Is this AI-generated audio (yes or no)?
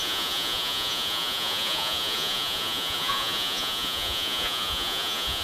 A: yes